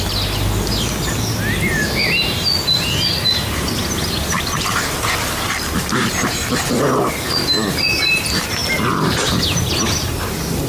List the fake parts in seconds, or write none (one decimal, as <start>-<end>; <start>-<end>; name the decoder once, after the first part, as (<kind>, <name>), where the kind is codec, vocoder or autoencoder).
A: none